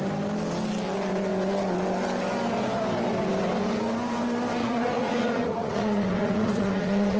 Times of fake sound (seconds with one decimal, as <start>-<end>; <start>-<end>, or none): 4.6-7.2